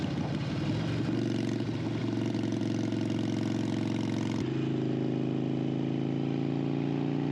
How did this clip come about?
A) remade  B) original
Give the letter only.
B